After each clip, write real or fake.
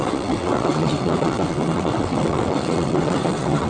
fake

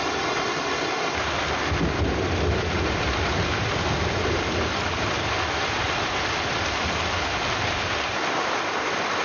real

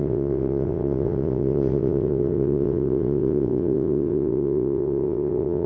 fake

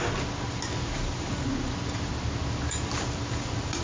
real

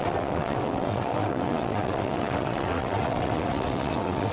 fake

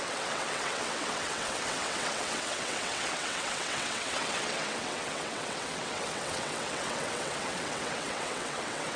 fake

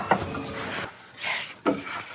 real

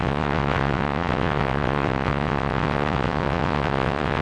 fake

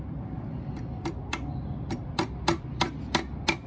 real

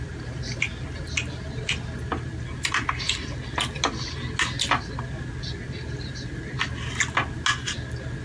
real